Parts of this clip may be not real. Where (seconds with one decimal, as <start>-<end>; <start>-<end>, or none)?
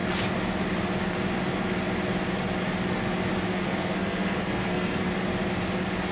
3.5-5.1